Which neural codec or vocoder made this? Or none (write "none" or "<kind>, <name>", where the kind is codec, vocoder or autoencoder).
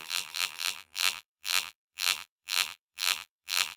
vocoder, BigVGAN v2